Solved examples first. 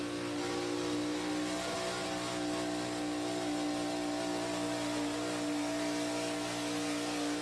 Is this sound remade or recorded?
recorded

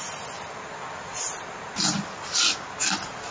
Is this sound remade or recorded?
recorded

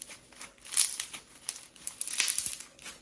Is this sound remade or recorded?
recorded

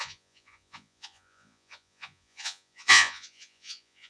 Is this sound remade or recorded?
remade